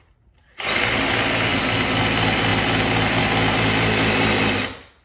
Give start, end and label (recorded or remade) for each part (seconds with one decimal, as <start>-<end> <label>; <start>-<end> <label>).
0.0-1.5 recorded; 1.5-2.0 remade; 2.0-5.0 recorded